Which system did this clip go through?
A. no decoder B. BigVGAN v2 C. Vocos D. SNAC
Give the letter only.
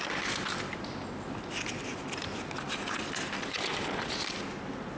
A